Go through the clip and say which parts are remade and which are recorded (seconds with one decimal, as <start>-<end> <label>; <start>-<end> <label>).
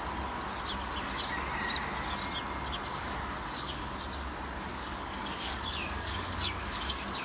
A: 0.0-2.9 recorded; 2.9-3.8 remade; 3.8-4.7 recorded; 4.7-7.2 remade